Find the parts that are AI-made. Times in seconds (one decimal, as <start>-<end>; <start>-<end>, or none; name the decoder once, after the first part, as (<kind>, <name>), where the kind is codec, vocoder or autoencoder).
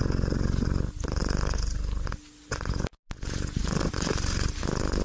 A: none